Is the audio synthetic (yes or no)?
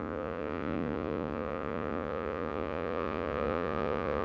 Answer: yes